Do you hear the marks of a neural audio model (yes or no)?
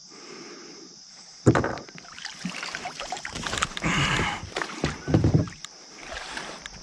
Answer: yes